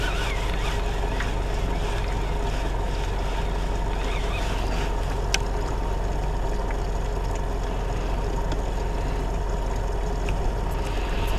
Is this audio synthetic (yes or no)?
no